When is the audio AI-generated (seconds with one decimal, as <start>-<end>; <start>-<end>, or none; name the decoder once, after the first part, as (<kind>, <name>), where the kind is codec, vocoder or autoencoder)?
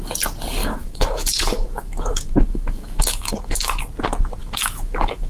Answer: 0.6-3.8 (autoencoder, DAC-VAE); 4.4-5.3